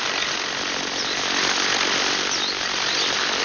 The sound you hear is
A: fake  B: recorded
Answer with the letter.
B